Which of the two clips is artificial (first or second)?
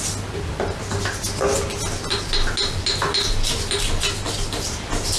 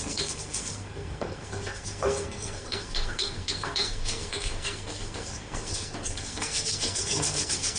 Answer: second